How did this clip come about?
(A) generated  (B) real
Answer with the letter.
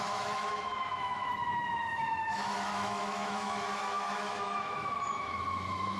A